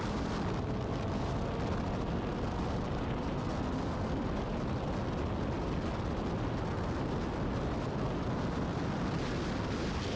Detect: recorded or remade recorded